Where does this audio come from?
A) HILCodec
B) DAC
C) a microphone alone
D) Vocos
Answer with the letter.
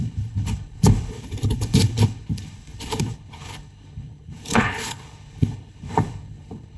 A